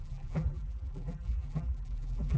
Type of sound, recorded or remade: remade